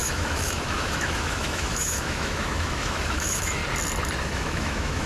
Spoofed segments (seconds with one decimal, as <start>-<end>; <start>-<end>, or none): 0.0-3.6; 4.2-5.1